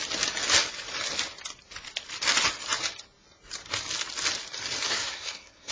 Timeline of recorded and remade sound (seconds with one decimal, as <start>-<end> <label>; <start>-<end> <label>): 0.0-4.9 recorded; 4.9-5.7 remade